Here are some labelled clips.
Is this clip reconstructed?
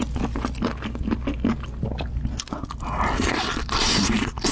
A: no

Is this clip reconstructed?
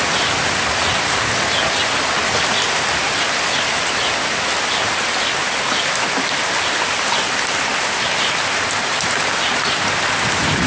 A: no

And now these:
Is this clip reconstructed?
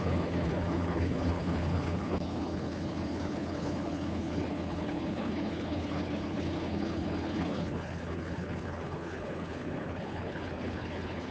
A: yes